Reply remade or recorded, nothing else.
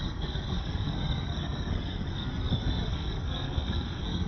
remade